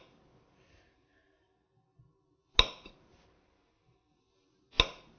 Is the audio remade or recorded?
recorded